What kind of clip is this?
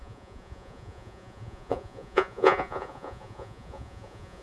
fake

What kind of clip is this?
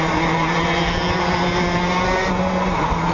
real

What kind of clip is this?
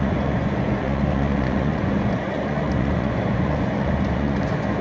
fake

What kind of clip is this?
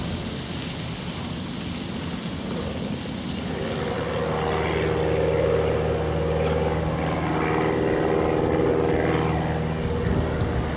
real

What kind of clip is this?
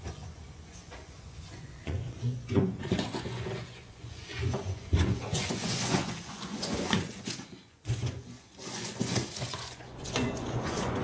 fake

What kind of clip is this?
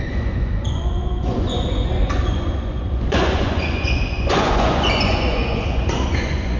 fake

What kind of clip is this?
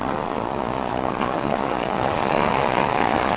fake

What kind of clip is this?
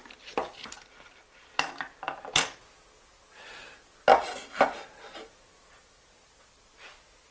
real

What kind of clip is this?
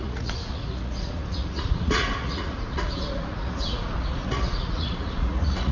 fake